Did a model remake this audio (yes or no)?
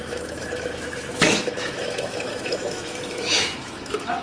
yes